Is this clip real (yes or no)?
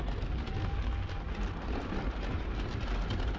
yes